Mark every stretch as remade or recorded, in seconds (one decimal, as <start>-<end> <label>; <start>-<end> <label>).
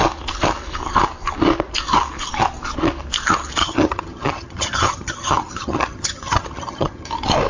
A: 0.0-3.6 recorded; 3.6-7.1 remade; 7.1-7.5 recorded